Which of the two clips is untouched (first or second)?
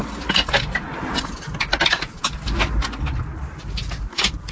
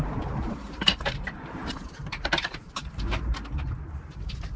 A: first